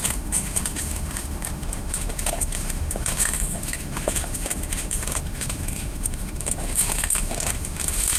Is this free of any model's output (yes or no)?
no